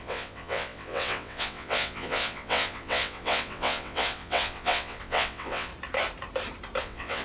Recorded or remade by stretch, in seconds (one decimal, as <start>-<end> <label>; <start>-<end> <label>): 0.0-5.7 remade; 5.7-6.8 recorded; 6.8-7.2 remade